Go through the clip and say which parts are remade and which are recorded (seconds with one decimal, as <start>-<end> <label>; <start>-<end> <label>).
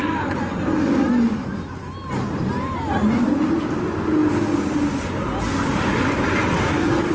0.0-7.1 recorded